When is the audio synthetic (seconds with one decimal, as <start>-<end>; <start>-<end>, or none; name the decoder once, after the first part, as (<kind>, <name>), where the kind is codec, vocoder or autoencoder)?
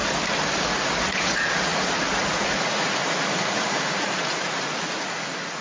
1.0-5.6 (vocoder, Vocos)